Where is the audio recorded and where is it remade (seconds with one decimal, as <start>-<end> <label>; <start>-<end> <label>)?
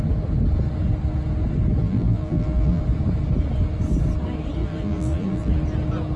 0.0-1.8 recorded; 1.8-2.8 remade; 2.8-4.6 recorded; 4.6-5.5 remade; 5.5-6.2 recorded